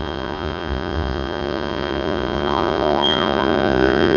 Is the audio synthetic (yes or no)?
yes